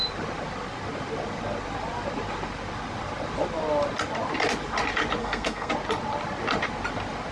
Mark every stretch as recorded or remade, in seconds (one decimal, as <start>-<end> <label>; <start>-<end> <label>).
0.0-5.2 recorded; 5.2-5.7 remade; 5.7-7.3 recorded